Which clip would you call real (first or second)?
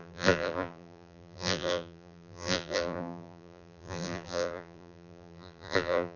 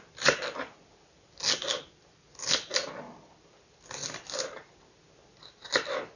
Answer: second